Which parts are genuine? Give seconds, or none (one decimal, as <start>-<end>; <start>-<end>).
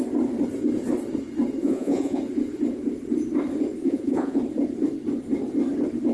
0.0-1.6; 2.2-3.8; 4.4-6.1